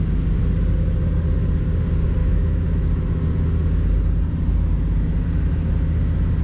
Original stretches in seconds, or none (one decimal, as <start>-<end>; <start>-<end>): 0.0-2.2; 2.9-6.4